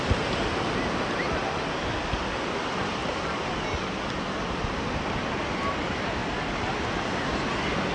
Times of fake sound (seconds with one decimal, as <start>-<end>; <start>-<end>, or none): none